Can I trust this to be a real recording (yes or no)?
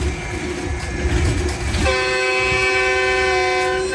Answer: yes